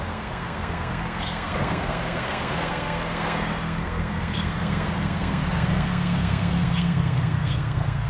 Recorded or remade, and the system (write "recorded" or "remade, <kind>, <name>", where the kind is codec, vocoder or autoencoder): remade, codec, SNAC